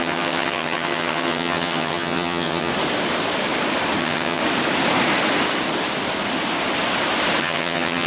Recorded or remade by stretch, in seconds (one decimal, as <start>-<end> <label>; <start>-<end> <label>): 0.0-2.7 remade; 2.7-4.0 recorded; 4.0-4.4 remade; 4.4-7.4 recorded; 7.4-8.1 remade